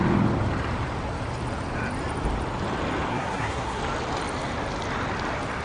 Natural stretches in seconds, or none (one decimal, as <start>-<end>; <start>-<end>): 0.0-3.1; 3.8-5.6

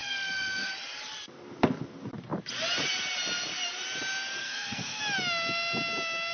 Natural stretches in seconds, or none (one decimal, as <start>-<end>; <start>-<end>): 0.7-4.4; 5.0-6.3

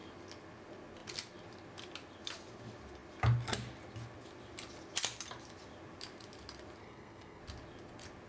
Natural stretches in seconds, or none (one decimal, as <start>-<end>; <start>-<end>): 0.0-6.8; 7.4-8.3